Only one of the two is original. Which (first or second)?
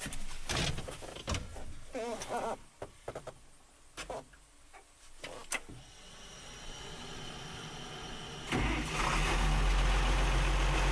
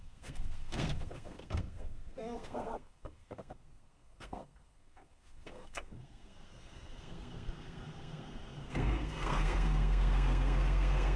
first